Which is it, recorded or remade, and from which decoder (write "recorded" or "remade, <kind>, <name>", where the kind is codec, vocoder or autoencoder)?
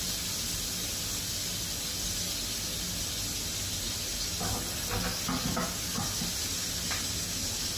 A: recorded